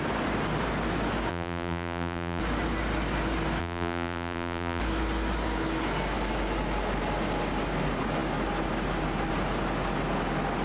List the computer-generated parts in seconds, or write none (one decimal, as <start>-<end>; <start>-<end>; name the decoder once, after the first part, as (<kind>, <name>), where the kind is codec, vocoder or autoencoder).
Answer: 1.3-2.4 (vocoder, BigVGAN v2); 3.6-4.8